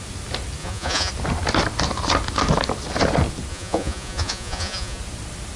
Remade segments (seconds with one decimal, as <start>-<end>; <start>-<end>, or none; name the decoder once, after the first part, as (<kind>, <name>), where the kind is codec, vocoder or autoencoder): 0.6-1.1 (vocoder, Vocos); 3.5-5.0